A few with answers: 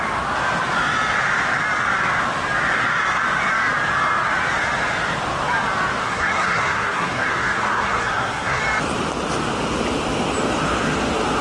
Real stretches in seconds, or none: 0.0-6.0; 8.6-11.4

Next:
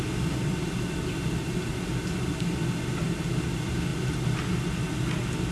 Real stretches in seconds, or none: 0.0-5.5

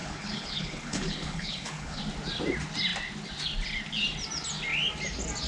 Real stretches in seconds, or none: 2.0-5.5

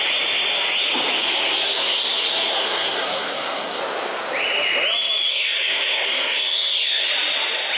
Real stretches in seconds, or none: 0.0-1.2; 3.8-5.3; 7.1-7.8